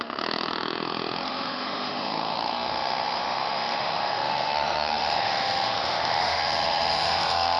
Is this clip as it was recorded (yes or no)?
no